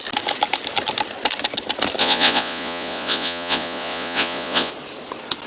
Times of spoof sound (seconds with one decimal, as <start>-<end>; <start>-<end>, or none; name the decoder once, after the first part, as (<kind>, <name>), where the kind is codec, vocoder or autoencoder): 2.0-4.7 (vocoder, Vocos)